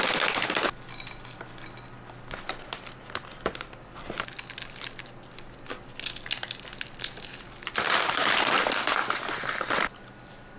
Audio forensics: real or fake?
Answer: real